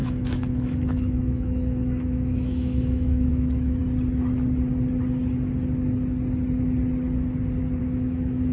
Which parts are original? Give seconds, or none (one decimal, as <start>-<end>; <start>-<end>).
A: 3.8-7.8

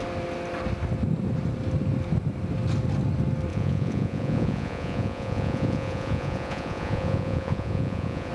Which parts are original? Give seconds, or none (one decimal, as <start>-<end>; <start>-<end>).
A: 0.0-3.5

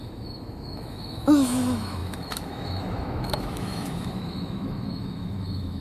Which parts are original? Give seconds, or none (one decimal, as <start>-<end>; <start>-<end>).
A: none

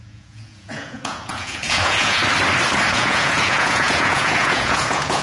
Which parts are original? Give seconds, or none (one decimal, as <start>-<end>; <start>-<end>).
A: 2.2-2.9

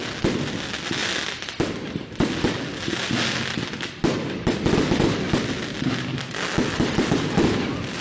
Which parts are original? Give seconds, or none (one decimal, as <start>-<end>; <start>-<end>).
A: 0.0-8.0

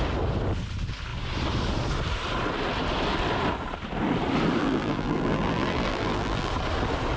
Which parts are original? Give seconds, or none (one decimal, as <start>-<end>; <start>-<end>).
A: 0.0-4.6; 6.5-7.2